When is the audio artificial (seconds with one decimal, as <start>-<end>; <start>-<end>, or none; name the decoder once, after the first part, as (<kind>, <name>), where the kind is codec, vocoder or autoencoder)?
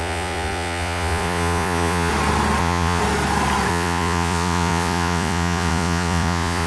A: 0.0-2.1 (vocoder, Vocos); 2.6-3.0; 3.7-6.7